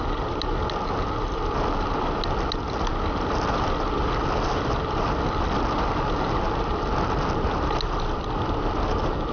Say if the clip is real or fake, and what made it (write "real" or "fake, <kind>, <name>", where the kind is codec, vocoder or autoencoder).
real